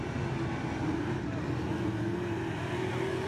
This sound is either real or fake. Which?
real